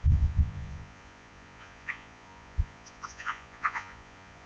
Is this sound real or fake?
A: fake